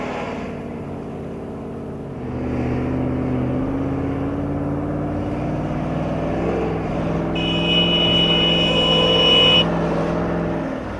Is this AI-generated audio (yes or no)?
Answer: no